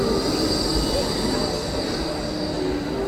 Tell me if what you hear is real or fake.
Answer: real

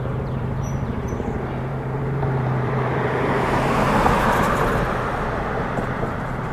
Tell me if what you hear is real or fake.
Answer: fake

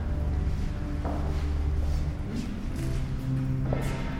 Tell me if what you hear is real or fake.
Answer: real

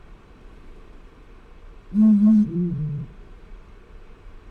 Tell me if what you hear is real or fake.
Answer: fake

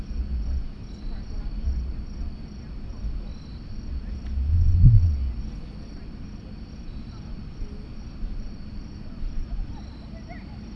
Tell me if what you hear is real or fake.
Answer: real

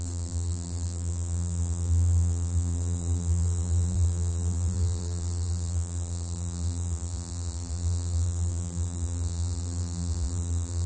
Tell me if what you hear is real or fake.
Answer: fake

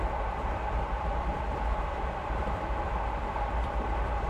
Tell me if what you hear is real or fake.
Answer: fake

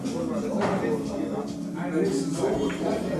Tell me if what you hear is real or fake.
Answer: real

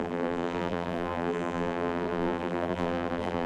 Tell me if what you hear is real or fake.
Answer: fake